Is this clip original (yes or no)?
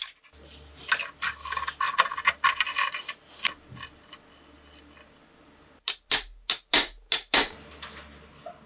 yes